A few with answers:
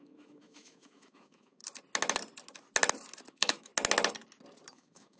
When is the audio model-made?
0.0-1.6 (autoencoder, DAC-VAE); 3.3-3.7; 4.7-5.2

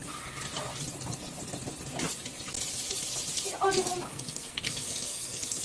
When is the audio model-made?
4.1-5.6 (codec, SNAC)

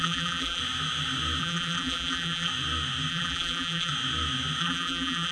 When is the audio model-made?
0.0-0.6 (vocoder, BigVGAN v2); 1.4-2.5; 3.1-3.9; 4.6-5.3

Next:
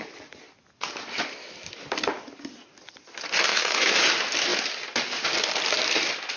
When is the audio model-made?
3.5-4.1 (autoencoder, DAC-VAE)

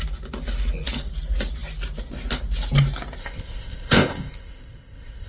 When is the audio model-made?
3.2-5.3 (codec, ZipCodec)

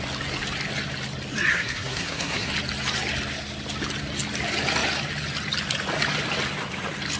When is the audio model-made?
1.5-2.5 (codec, SNAC)

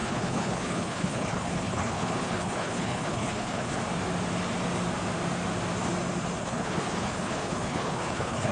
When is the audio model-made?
0.0-3.8 (codec, HILCodec); 6.4-8.5